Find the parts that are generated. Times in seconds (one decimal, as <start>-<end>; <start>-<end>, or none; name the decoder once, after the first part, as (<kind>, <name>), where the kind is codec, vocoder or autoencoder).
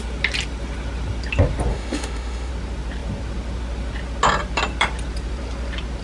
1.7-2.5 (autoencoder, DAC-VAE)